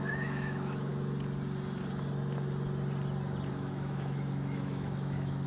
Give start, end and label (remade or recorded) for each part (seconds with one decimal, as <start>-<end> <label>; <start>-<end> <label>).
0.0-0.9 remade; 0.9-3.5 recorded; 3.5-5.5 remade

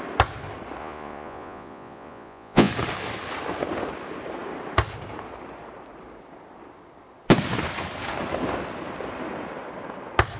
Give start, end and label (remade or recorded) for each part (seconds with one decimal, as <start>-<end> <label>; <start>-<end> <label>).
0.0-0.8 recorded; 0.8-2.7 remade; 2.7-10.4 recorded

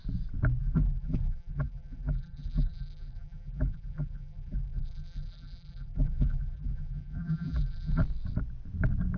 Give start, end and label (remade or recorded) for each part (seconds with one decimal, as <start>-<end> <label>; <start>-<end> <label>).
0.0-0.6 recorded; 0.6-8.0 remade; 8.0-9.2 recorded